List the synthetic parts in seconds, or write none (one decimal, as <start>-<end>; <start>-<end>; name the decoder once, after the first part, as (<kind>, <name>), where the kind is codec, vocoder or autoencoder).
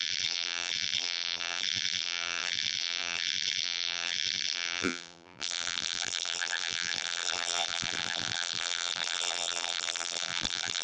0.0-10.8 (vocoder, BigVGAN v2)